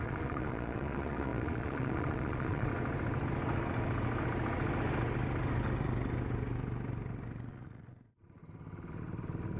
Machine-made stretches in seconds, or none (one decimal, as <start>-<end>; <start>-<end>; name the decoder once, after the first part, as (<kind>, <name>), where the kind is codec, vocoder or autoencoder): 0.0-2.7 (vocoder, Vocos); 7.5-8.4